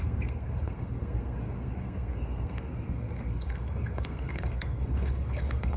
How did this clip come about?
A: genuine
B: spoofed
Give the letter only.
B